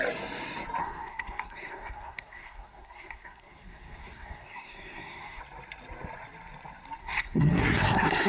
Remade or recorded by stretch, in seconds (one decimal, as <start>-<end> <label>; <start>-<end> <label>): 0.0-0.8 recorded; 0.8-5.4 remade; 5.4-7.0 recorded; 7.0-8.3 remade